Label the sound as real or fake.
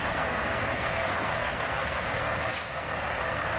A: fake